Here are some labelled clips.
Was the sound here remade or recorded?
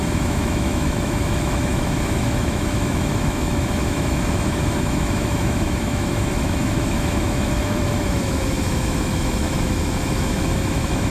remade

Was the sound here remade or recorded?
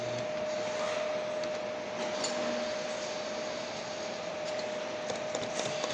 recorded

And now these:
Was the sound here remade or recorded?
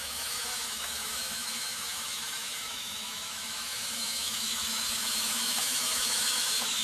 remade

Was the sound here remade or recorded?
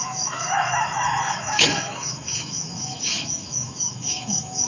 remade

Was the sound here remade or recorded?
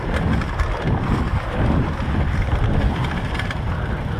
recorded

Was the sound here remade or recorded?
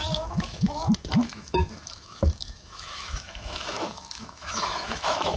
remade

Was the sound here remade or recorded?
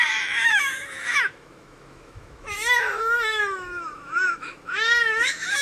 remade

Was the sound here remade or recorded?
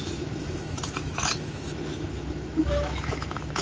remade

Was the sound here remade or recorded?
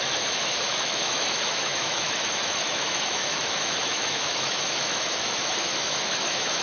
remade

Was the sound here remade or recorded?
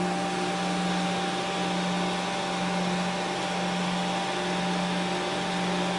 recorded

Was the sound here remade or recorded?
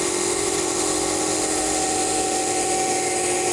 remade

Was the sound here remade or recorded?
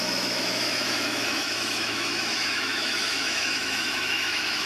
remade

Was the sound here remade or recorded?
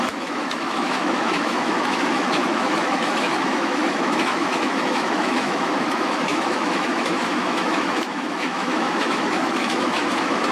remade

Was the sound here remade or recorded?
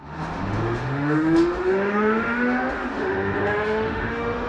remade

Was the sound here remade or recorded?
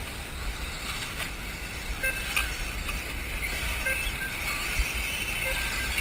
recorded